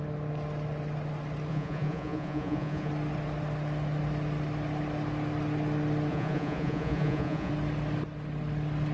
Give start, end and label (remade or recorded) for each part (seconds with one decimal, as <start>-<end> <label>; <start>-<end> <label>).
0.0-1.5 recorded; 1.5-2.9 remade; 2.9-6.1 recorded; 6.1-7.5 remade; 7.5-8.9 recorded